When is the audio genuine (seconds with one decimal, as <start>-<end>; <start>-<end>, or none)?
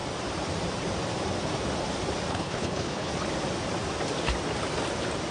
0.0-2.3; 3.1-5.3